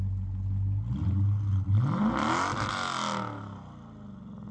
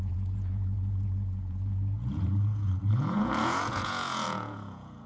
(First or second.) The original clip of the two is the first